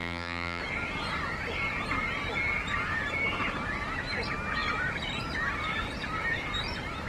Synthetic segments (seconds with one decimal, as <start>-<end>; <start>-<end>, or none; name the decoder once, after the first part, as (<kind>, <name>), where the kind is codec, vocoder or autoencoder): 0.0-0.6 (vocoder, BigVGAN v2)